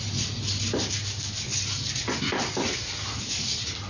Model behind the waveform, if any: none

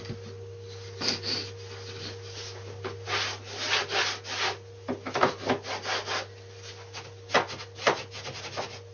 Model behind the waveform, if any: none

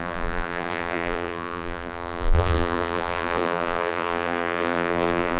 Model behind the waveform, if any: vocoder, BigVGAN v2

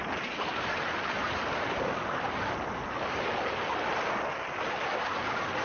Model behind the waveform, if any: none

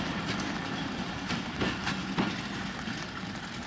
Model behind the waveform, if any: none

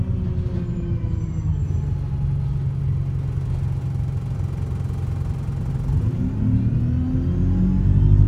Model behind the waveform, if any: none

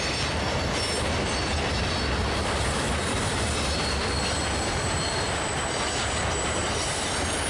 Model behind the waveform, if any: vocoder, BigVGAN v2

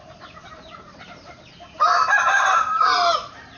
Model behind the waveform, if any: vocoder, BigVGAN v2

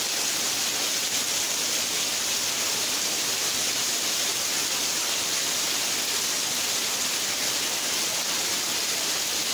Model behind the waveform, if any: none